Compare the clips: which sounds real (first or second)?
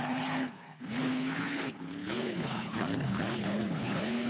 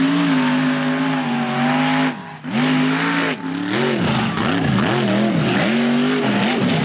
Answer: second